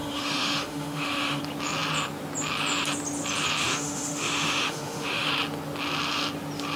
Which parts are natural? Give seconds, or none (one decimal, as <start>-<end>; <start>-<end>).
1.4-3.6; 5.3-6.8